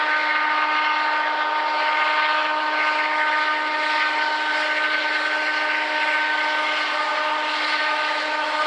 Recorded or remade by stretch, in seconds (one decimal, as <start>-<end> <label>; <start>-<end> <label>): 0.0-7.8 recorded; 7.8-8.7 remade